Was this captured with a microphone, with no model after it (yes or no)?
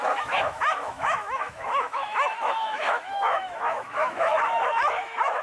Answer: no